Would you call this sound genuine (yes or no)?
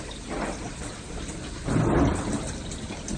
yes